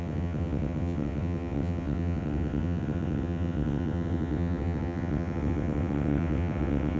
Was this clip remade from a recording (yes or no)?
yes